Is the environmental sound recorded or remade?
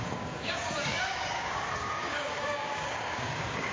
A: remade